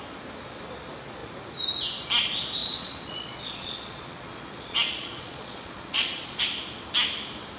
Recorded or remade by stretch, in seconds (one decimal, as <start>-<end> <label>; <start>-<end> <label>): 0.0-2.6 recorded; 2.6-6.4 remade; 6.4-7.6 recorded